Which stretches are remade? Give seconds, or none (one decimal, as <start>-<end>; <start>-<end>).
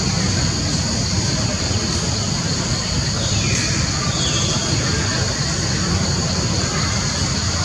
none